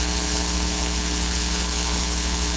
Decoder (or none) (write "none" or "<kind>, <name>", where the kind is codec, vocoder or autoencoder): codec, HILCodec